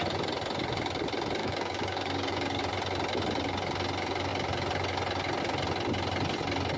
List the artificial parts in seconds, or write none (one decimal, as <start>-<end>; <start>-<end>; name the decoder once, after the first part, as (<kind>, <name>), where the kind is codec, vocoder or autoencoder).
1.4-2.6 (codec, DAC)